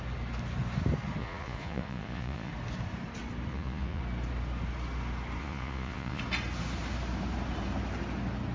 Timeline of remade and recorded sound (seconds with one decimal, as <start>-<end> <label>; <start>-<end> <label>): 0.0-1.2 recorded; 1.2-2.5 remade; 2.5-3.5 recorded; 3.5-4.0 remade; 4.0-5.4 recorded; 5.4-6.2 remade; 6.2-8.5 recorded